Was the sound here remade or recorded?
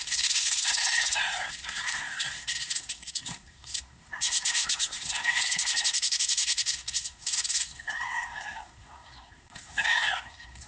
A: remade